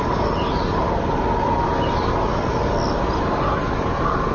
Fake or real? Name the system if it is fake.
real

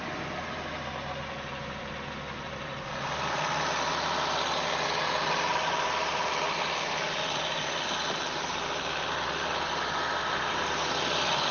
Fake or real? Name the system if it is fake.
real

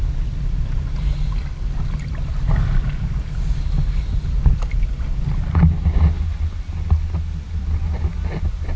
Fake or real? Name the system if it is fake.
real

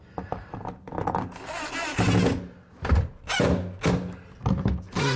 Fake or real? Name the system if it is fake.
real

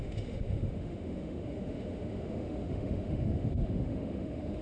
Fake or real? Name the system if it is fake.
fake, autoencoder, DAC-VAE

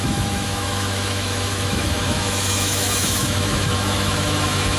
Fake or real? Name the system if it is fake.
fake, autoencoder, DAC-VAE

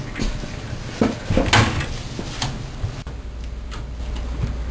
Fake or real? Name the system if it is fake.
real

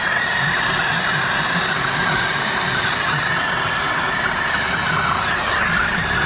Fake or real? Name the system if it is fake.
real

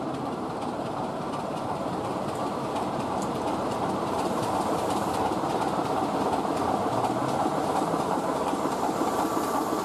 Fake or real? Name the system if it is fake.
fake, vocoder, BigVGAN v2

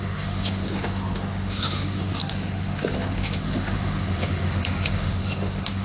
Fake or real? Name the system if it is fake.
fake, autoencoder, DAC-VAE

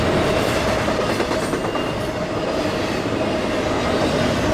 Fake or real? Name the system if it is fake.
real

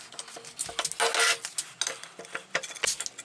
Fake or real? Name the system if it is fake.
real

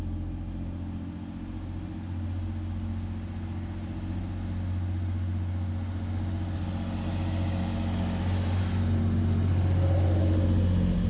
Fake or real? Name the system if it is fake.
real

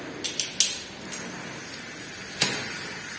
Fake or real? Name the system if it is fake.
real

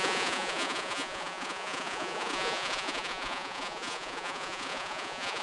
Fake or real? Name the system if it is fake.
fake, vocoder, Vocos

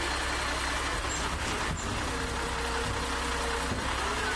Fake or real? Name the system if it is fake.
real